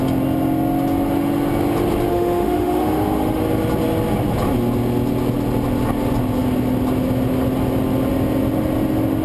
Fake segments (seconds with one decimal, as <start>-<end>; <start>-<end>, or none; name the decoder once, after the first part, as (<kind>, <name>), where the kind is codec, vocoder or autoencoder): 2.1-3.4 (autoencoder, DAC-VAE)